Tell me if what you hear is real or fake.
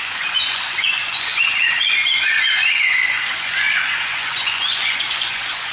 fake